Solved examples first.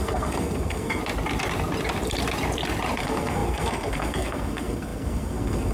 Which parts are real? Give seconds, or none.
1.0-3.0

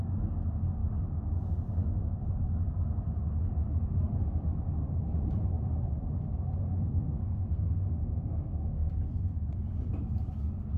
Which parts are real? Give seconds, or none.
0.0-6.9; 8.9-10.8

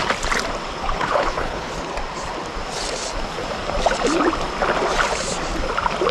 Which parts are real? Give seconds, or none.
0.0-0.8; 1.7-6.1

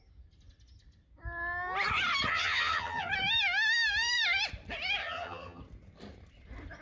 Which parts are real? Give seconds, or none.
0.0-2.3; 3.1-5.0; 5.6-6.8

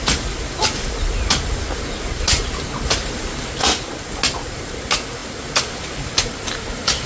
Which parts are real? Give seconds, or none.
0.0-7.1

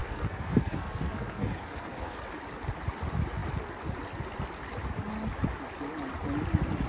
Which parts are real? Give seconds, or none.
2.2-6.9

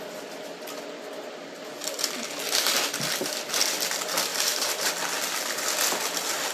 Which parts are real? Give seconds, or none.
0.0-4.3; 4.9-6.5